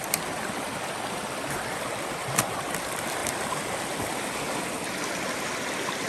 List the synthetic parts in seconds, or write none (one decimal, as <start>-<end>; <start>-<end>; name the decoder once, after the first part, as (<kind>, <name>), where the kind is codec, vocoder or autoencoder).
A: 0.0-3.2 (vocoder, BigVGAN v2); 4.1-6.1